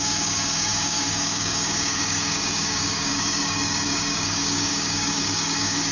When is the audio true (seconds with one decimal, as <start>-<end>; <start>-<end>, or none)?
none